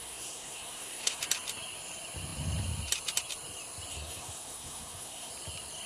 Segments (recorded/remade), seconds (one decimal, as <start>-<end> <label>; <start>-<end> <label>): 0.0-1.2 remade; 1.2-3.9 recorded; 3.9-5.3 remade; 5.3-5.9 recorded